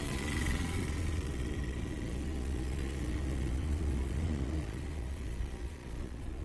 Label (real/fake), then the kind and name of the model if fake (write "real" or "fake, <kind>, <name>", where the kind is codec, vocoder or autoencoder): fake, vocoder, Vocos